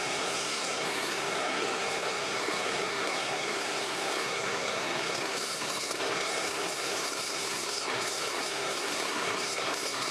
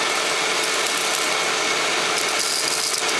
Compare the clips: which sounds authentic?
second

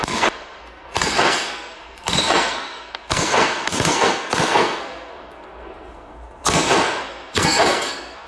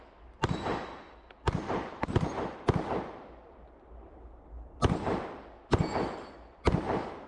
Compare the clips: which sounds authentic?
second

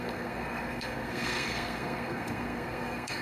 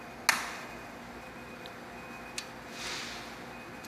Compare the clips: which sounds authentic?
second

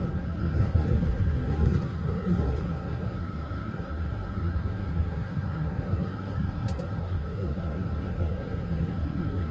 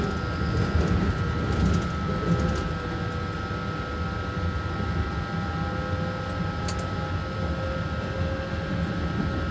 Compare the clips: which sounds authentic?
second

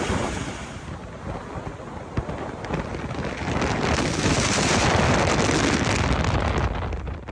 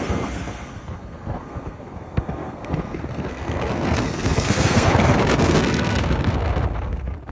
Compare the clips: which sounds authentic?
first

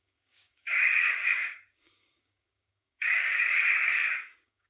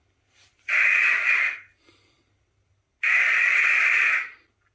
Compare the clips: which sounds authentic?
second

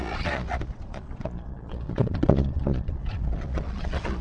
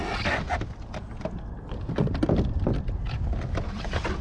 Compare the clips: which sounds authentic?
second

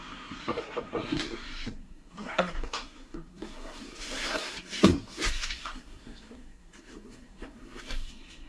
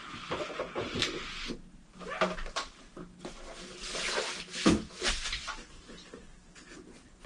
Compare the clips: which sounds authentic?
second